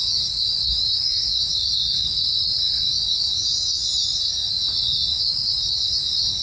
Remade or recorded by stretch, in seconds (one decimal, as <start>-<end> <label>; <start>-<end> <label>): 0.0-6.4 recorded